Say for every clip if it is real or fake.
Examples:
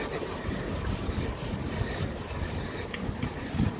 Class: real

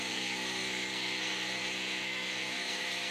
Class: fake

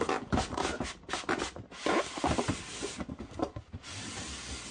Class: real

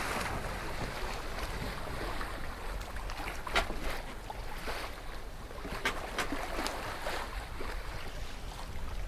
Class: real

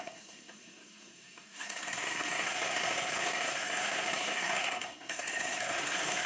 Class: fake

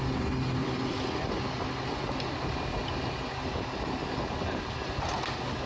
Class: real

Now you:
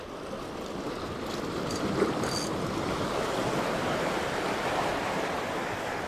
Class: real